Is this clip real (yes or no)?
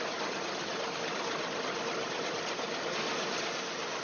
yes